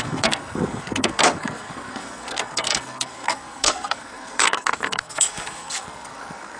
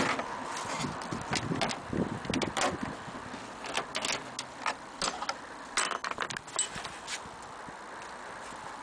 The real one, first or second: second